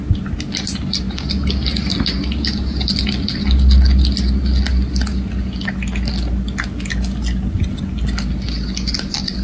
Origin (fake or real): real